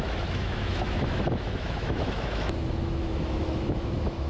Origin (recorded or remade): remade